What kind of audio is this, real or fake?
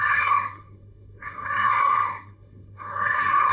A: fake